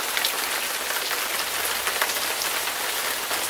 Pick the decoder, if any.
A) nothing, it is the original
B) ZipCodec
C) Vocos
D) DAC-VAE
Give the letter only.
A